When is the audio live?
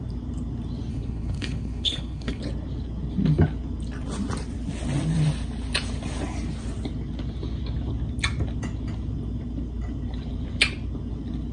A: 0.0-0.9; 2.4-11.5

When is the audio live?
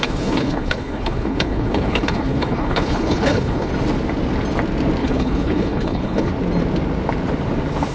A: 3.7-5.0; 6.3-7.9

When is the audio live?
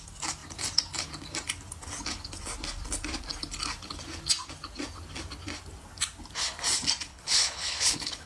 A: 0.0-7.1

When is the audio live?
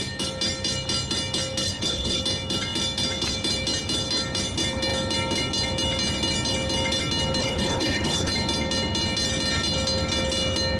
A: 0.0-1.6; 2.2-7.4; 8.3-10.8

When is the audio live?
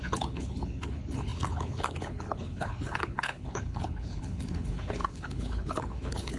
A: none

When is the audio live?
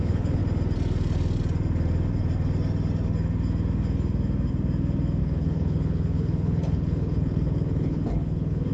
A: 0.4-5.2